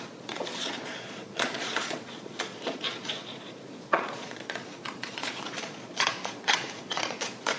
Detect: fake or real fake